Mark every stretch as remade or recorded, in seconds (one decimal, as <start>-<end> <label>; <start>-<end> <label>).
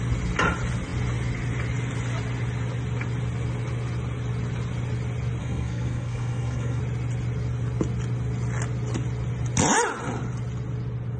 0.0-5.4 recorded; 5.4-6.8 remade; 6.8-11.2 recorded